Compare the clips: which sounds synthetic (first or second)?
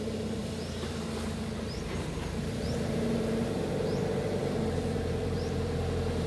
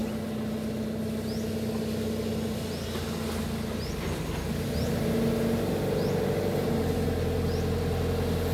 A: first